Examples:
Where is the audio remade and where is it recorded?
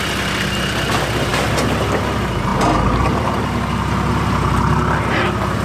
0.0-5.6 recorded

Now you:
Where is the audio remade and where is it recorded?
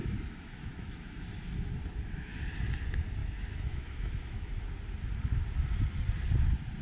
0.0-1.3 remade; 1.3-3.2 recorded; 3.2-4.6 remade; 4.6-6.8 recorded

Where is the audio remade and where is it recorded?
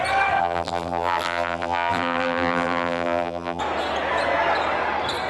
0.0-0.4 recorded; 0.4-3.6 remade; 3.6-5.3 recorded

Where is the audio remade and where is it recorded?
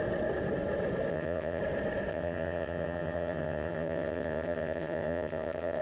0.0-1.1 recorded; 1.1-1.6 remade; 1.6-2.1 recorded; 2.1-5.8 remade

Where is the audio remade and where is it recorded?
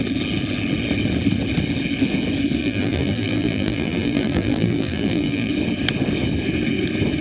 0.0-2.6 recorded; 2.6-5.5 remade; 5.5-7.2 recorded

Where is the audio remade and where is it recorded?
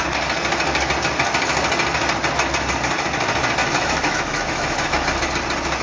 0.0-3.6 recorded; 3.6-5.3 remade; 5.3-5.8 recorded